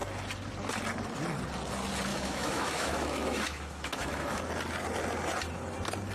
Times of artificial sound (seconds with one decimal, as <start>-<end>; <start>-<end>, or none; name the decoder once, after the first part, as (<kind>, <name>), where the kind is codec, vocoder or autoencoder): 2.1-4.4 (autoencoder, DAC-VAE)